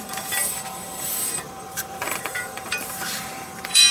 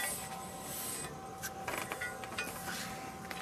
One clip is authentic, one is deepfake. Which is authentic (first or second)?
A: second